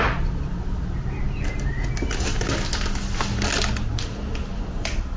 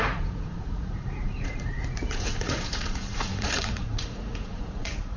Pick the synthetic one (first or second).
second